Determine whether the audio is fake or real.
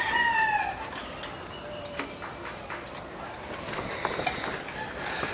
real